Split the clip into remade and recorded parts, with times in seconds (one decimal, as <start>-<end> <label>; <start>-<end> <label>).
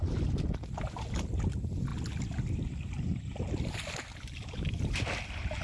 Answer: 0.0-5.6 recorded